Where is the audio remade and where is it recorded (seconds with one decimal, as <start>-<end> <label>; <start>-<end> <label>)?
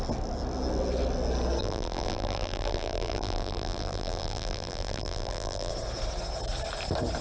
0.0-1.6 recorded; 1.6-5.7 remade; 5.7-7.2 recorded